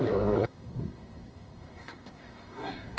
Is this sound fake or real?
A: fake